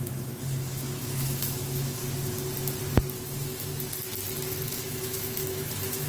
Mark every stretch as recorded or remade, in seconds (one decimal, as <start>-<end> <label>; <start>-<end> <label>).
0.0-2.0 remade; 2.0-3.2 recorded; 3.2-3.7 remade; 3.7-4.8 recorded; 4.8-6.1 remade